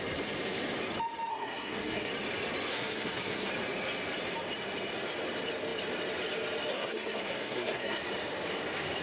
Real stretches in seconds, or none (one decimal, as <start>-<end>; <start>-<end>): 0.0-1.3; 2.1-2.7; 3.5-6.7; 8.0-9.0

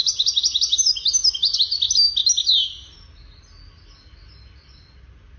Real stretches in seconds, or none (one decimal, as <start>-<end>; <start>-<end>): 0.0-5.4

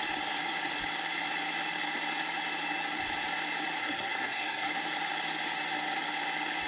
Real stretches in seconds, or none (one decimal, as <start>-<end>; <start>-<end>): 0.0-3.8; 4.7-6.7